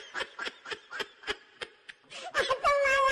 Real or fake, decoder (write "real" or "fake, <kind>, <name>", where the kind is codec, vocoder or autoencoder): fake, vocoder, BigVGAN v2